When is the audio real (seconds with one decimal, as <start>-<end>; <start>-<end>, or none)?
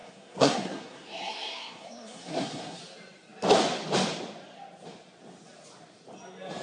2.8-6.6